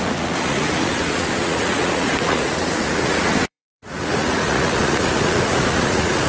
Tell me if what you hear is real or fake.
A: fake